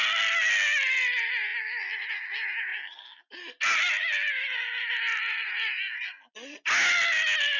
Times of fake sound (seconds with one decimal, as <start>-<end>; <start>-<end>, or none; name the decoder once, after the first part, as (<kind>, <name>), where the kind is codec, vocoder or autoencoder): none